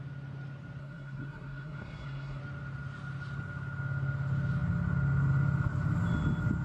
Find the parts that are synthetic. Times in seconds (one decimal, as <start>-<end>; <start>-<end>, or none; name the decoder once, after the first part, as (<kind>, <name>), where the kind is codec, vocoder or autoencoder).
0.8-2.4 (codec, SNAC)

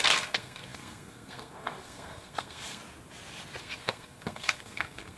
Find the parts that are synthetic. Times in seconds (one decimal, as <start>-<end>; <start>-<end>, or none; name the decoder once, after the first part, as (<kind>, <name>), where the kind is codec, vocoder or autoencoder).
0.0-2.8 (codec, SNAC); 3.6-5.2

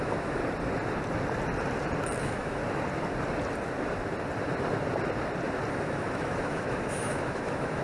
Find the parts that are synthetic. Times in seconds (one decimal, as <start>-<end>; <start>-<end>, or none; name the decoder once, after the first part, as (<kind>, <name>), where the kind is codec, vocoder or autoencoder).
0.0-0.4 (autoencoder, DAC-VAE); 2.2-2.6; 5.7-7.8

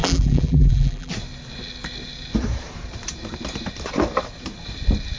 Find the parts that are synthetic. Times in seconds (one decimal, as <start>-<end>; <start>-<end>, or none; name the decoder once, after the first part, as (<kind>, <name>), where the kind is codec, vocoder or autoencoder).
0.0-1.1 (vocoder, BigVGAN v2)

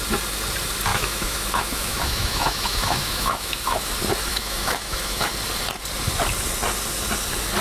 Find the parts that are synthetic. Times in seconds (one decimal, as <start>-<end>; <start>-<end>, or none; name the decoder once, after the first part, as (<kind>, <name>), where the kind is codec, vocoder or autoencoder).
0.9-3.9 (autoencoder, DAC-VAE); 4.3-5.3

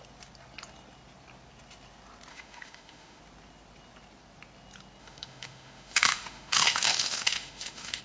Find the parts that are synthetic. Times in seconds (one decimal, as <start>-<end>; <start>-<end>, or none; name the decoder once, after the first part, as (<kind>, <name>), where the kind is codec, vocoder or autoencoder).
2.3-3.2 (autoencoder, DAC-VAE); 5.0-8.0